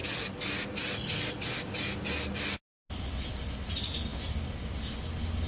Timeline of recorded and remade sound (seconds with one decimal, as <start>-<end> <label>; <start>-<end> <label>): 0.0-5.5 recorded

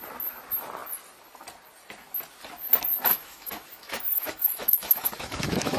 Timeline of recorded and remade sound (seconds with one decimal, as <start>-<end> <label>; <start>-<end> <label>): 0.0-3.1 recorded; 3.1-5.8 remade